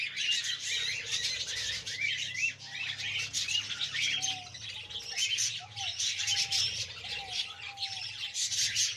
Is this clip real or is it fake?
real